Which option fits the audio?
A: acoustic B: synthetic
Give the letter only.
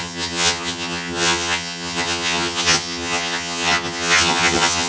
B